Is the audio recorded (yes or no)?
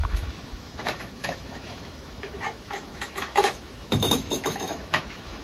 no